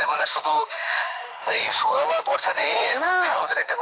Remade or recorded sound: remade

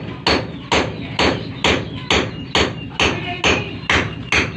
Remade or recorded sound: recorded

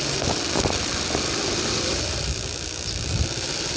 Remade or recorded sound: recorded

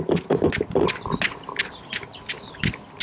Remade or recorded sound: recorded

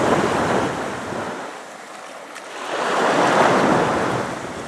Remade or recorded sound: recorded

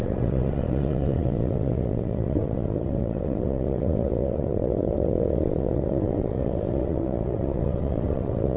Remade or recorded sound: remade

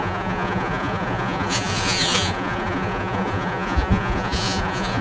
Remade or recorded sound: remade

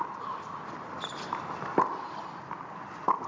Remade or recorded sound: recorded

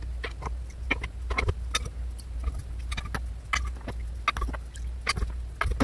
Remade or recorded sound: recorded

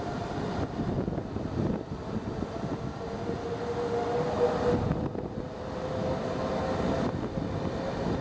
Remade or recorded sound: recorded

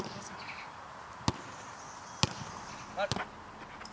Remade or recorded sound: recorded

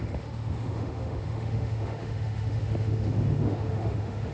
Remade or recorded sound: remade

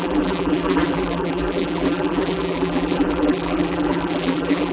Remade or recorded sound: remade